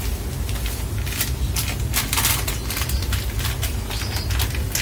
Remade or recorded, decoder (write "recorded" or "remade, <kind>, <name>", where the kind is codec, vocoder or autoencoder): recorded